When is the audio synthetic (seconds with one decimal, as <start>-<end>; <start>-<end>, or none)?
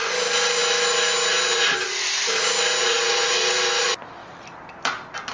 none